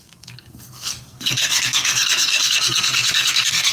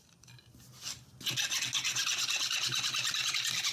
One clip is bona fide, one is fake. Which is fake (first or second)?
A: first